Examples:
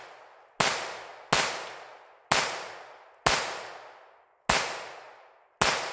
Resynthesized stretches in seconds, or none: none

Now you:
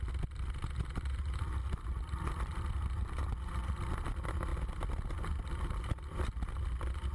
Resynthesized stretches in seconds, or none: none

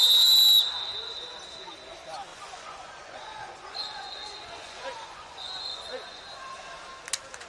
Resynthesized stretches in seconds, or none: 2.3-6.2

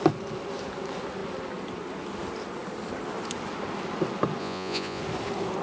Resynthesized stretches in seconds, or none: 4.4-5.0

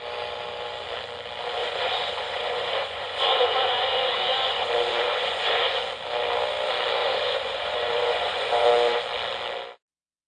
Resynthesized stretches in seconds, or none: 1.6-5.8; 7.0-8.7

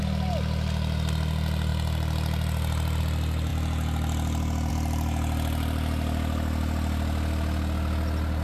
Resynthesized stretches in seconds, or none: none

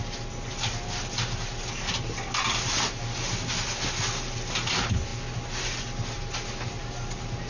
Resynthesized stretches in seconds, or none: none

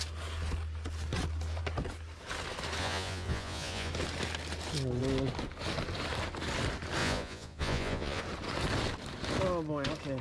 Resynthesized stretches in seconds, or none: 2.8-3.9; 7.0-8.2